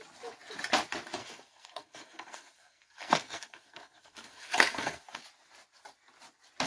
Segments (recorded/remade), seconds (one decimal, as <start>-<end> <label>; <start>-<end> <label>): 0.0-1.2 recorded; 1.2-5.2 remade; 5.2-6.7 recorded